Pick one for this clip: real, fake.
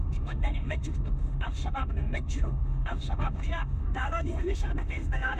fake